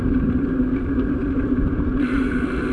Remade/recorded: recorded